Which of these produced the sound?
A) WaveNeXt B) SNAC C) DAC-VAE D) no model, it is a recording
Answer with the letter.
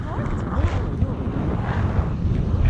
D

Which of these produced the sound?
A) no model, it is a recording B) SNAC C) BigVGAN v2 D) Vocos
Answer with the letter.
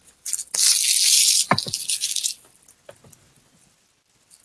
A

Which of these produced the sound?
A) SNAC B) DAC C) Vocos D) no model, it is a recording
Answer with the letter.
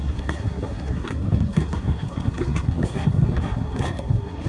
A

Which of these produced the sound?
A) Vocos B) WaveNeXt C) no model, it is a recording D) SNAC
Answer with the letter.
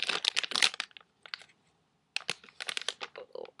C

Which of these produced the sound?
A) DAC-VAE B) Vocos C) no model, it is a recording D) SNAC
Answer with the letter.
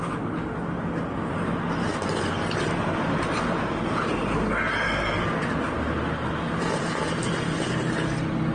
C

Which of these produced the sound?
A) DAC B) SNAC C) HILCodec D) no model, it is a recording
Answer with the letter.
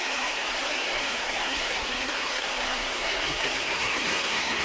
B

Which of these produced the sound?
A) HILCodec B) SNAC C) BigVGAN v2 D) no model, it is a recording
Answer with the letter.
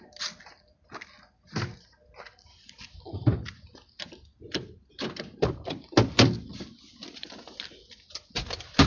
D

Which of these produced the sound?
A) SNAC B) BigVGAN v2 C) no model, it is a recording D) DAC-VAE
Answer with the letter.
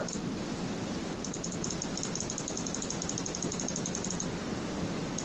C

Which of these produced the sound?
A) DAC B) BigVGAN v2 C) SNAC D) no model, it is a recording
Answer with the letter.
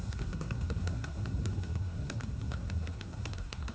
C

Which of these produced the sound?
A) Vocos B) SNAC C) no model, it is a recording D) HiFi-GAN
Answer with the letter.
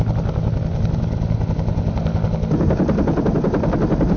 C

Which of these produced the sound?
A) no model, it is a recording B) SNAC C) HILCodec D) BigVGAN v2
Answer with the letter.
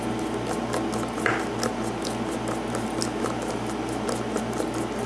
A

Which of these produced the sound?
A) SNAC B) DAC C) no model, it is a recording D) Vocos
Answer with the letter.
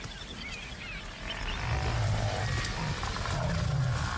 C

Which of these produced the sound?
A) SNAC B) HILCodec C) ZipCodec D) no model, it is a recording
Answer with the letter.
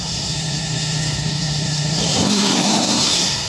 A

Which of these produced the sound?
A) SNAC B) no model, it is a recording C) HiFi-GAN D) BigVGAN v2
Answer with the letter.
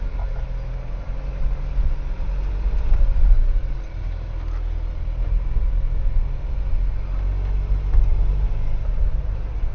B